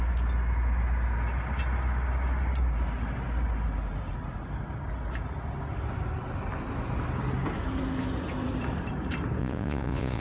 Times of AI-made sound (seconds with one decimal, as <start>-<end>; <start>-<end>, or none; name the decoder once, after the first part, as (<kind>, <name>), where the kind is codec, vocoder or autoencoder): 9.4-10.2 (vocoder, Vocos)